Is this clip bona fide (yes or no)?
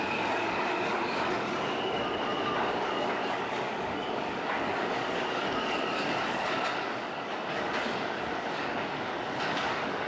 no